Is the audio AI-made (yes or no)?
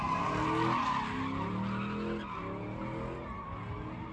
no